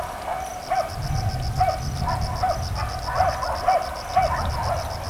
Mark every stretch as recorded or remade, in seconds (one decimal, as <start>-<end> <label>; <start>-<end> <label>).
0.0-5.1 recorded